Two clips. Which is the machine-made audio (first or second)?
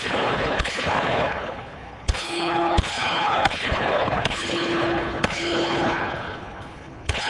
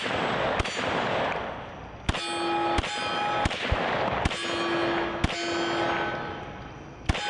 first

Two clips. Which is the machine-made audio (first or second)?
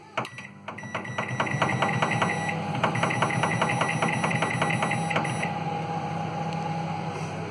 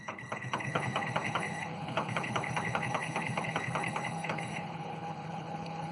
second